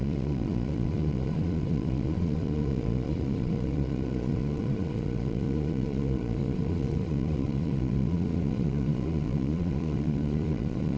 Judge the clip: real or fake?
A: fake